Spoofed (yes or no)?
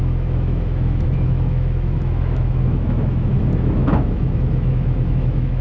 yes